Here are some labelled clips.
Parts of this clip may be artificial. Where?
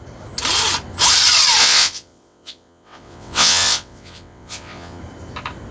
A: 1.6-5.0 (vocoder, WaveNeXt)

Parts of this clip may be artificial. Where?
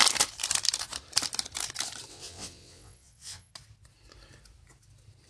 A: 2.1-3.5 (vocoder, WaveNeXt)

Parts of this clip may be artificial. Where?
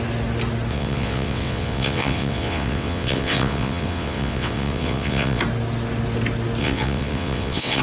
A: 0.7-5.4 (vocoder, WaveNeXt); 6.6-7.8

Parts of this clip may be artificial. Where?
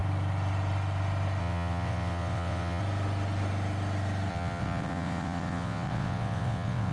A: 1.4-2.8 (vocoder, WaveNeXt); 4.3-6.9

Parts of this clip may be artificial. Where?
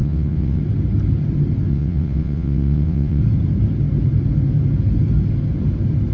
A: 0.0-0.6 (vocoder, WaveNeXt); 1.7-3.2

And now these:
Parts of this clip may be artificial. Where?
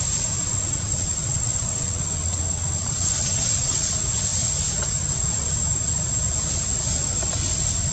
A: 0.5-3.9 (vocoder, WaveNeXt)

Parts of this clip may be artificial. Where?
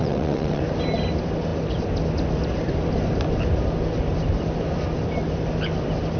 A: 0.0-0.6 (vocoder, WaveNeXt)